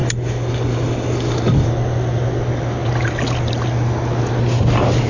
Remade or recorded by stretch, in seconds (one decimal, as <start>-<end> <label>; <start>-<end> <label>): 0.0-1.7 remade; 1.7-5.1 recorded